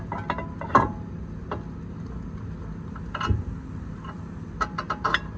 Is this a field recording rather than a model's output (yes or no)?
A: yes